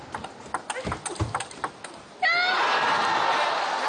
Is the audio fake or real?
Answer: real